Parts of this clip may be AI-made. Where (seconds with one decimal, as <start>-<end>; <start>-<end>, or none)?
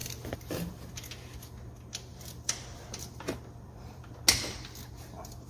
2.1-4.2